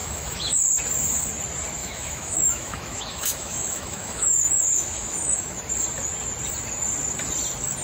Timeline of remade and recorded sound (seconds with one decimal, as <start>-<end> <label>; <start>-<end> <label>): 0.0-0.6 remade; 0.6-1.8 recorded; 1.8-5.7 remade; 5.7-7.8 recorded